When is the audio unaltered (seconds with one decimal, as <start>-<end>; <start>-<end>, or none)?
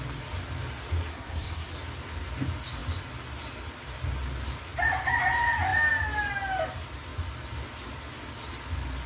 0.0-1.1; 1.7-9.1